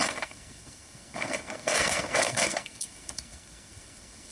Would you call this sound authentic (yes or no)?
no